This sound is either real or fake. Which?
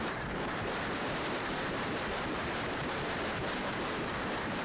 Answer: fake